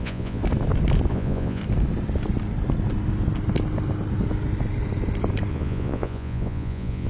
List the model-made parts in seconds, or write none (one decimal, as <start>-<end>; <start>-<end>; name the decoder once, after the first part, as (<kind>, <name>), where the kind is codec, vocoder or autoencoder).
0.0-0.4 (vocoder, Vocos); 1.1-1.6; 5.5-7.1